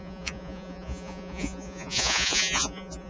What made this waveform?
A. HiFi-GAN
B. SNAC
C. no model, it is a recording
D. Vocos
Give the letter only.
D